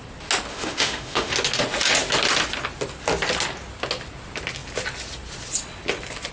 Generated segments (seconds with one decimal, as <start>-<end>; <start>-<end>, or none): 0.5-1.3